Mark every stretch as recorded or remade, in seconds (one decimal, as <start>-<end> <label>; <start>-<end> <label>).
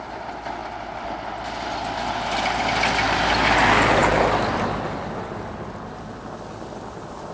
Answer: 0.0-7.3 recorded